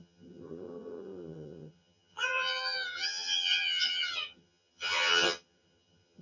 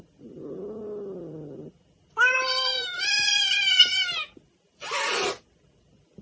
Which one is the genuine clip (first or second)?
second